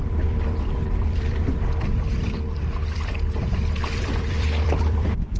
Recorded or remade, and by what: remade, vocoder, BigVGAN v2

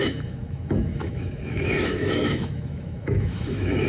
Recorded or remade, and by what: remade, autoencoder, DAC-VAE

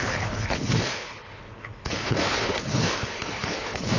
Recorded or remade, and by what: remade, codec, HILCodec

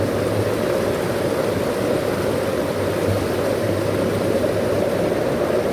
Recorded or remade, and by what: recorded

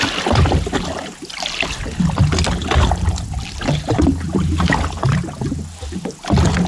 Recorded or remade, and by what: recorded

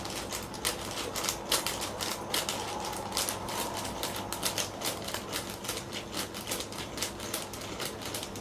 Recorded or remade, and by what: recorded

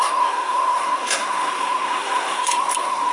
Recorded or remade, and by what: remade, codec, SNAC